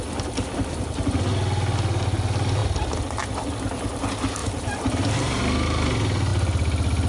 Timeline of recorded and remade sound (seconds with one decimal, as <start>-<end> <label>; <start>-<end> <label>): 0.0-4.4 recorded; 4.4-5.4 remade; 5.4-7.1 recorded